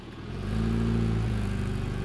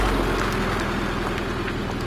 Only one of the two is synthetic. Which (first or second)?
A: first